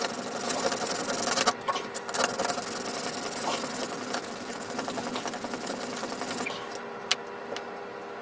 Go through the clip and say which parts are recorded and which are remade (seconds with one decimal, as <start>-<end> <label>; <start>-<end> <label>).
0.0-8.2 recorded